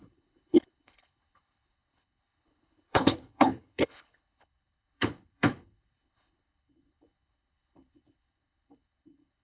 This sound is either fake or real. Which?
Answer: fake